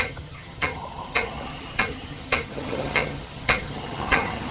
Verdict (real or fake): fake